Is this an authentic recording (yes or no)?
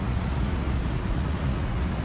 no